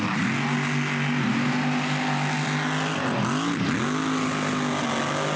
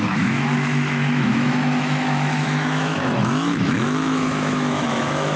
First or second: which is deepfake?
second